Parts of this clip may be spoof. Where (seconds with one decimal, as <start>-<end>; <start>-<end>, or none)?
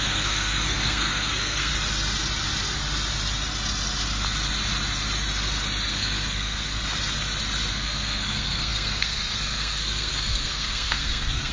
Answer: 0.0-1.7; 5.9-6.8; 7.7-11.5